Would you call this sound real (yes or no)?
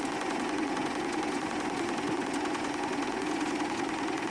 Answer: no